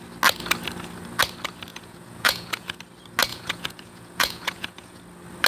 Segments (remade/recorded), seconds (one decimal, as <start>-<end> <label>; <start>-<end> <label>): 0.0-1.7 recorded; 1.7-2.8 remade; 2.8-3.3 recorded; 3.3-5.0 remade; 5.0-5.5 recorded